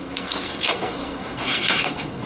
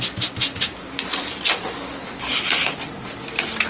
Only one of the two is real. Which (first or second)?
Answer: second